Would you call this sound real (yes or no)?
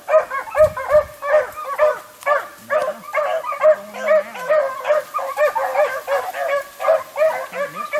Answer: yes